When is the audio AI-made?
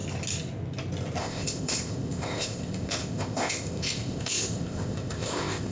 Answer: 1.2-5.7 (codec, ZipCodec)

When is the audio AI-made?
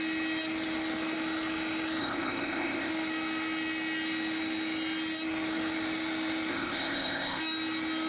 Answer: 2.0-2.9 (codec, ZipCodec); 6.5-7.4